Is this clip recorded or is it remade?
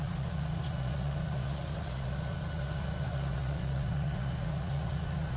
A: remade